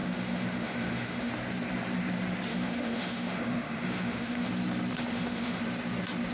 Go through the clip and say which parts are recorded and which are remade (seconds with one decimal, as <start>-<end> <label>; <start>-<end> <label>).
0.0-1.3 remade; 1.3-2.5 recorded; 2.5-4.5 remade; 4.5-4.9 recorded; 4.9-5.6 remade; 5.6-6.3 recorded